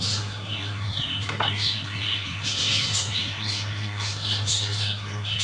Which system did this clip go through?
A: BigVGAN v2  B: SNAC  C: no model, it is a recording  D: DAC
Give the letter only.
B